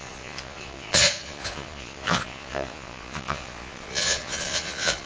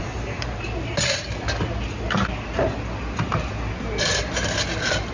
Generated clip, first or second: first